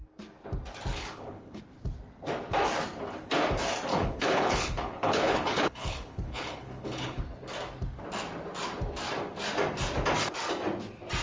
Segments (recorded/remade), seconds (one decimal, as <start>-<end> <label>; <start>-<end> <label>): 0.0-0.9 recorded; 0.9-1.6 remade; 1.6-3.9 recorded; 3.9-7.2 remade; 7.2-11.2 recorded